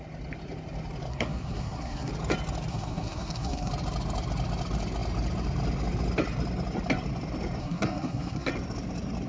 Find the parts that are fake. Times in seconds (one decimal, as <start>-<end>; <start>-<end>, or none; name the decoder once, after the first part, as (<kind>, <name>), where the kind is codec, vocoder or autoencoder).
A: 1.1-2.1 (codec, SNAC); 2.7-3.7; 7.6-8.5